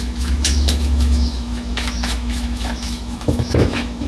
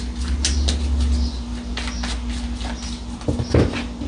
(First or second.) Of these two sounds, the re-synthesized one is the first